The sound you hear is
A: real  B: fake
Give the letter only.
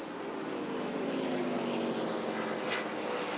A